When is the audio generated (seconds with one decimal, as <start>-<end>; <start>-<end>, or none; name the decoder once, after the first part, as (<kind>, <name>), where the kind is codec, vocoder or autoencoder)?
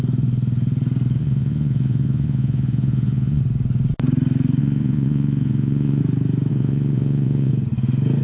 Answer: 1.2-3.4 (vocoder, Vocos); 4.6-6.0; 6.5-7.5